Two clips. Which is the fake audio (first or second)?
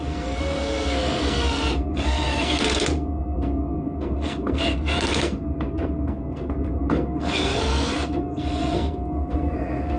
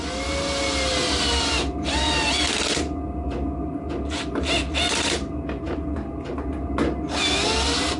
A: first